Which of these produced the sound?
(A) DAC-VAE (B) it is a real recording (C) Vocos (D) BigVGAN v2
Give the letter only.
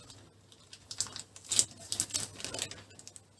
B